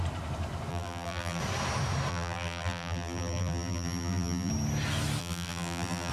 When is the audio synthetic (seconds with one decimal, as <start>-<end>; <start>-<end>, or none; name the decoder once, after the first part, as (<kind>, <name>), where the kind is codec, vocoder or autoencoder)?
0.7-1.4 (vocoder, BigVGAN v2); 2.1-4.5; 5.2-6.1